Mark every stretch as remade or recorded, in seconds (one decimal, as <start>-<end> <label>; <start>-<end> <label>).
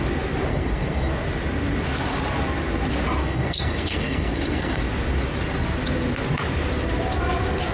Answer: 0.0-0.5 recorded; 0.5-1.1 remade; 1.1-3.2 recorded; 3.2-4.8 remade; 4.8-7.7 recorded